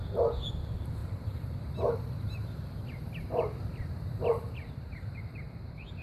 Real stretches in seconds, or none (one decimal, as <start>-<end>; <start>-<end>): none